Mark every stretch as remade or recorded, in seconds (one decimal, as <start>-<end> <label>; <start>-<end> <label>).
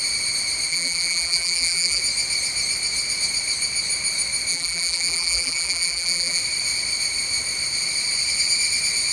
0.0-0.7 recorded; 0.7-2.0 remade; 2.0-4.5 recorded; 4.5-6.4 remade; 6.4-9.1 recorded